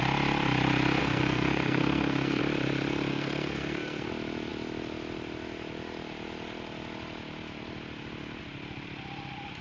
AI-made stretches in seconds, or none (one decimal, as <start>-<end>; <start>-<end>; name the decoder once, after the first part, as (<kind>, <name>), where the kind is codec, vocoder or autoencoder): 1.0-2.4 (codec, SNAC); 3.1-4.1

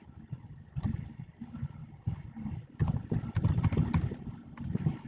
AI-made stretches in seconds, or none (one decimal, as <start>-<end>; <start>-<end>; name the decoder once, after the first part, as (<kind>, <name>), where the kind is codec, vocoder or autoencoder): none

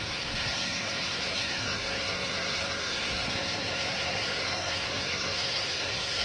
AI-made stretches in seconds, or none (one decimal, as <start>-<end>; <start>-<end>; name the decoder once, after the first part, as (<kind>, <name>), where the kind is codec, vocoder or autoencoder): 0.0-6.2 (codec, SNAC)

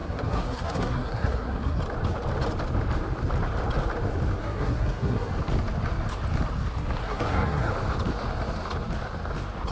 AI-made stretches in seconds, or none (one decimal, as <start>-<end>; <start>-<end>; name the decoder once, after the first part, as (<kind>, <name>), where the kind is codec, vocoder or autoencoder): 0.0-1.8 (codec, SNAC); 4.4-5.3; 7.0-7.7

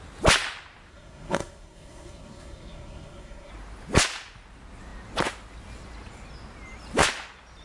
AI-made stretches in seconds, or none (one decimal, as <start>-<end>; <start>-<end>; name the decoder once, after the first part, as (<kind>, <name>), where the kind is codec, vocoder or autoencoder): 0.9-3.5 (codec, SNAC)